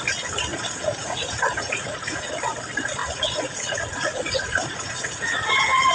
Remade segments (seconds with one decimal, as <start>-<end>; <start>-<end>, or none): 0.5-2.3; 3.0-5.9